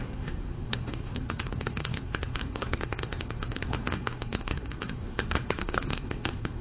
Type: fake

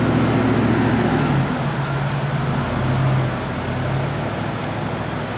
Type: real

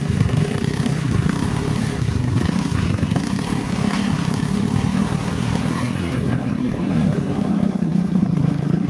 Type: fake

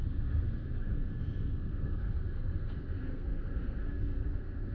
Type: fake